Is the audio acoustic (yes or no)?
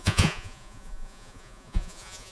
no